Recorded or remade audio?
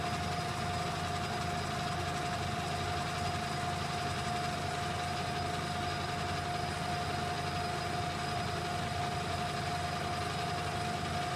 recorded